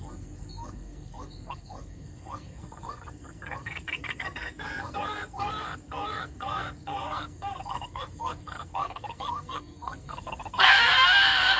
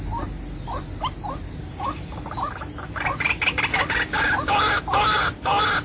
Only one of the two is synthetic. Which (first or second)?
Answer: first